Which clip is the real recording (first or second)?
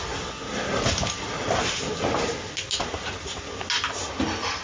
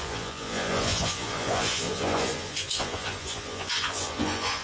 first